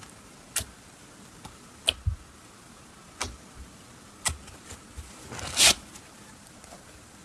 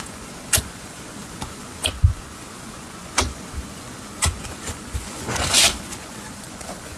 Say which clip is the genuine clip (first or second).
first